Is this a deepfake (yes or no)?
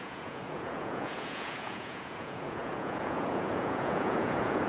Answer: yes